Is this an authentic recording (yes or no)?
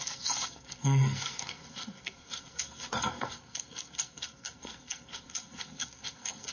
no